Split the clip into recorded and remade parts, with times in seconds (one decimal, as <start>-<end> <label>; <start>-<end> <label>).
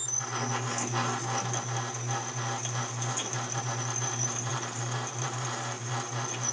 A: 0.0-4.5 recorded; 4.5-5.9 remade; 5.9-6.5 recorded